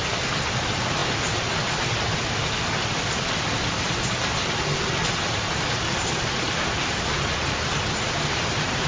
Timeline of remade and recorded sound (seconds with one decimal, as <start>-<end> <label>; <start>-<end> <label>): 0.0-8.9 recorded